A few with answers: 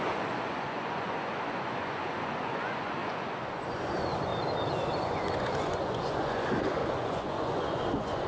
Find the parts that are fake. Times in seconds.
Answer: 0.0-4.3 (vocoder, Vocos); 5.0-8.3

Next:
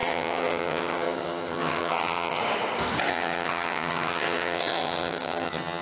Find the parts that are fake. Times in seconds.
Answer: 0.0-2.4 (vocoder, HiFi-GAN); 3.1-5.8